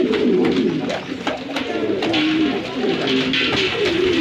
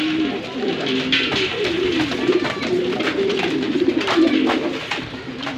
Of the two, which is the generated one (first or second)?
second